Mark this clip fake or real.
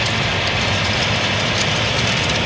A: fake